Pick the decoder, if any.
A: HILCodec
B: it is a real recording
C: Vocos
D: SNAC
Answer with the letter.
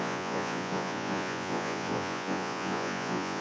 C